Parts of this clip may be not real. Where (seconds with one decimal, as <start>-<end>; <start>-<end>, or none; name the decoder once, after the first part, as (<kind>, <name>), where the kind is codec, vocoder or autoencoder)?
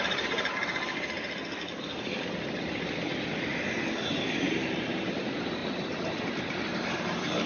0.0-5.6 (vocoder, BigVGAN v2); 6.2-7.5